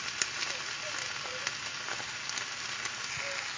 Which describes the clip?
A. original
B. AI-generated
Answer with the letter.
A